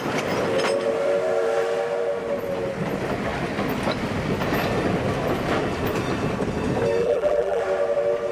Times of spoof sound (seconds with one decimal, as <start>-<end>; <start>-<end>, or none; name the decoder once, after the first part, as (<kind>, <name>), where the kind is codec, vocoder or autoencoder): 7.0-7.6 (vocoder, BigVGAN v2)